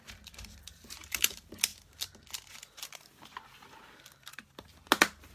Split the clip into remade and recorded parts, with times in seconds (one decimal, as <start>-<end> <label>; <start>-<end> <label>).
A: 0.0-5.3 recorded